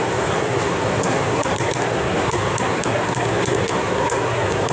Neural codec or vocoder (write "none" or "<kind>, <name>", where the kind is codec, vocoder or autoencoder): codec, SNAC